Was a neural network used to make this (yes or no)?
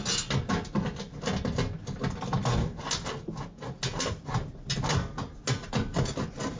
no